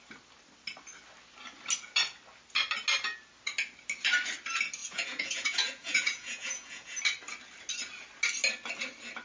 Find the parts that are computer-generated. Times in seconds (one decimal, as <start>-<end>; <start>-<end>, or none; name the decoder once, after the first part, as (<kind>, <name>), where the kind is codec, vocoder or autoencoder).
4.8-7.0 (vocoder, Vocos)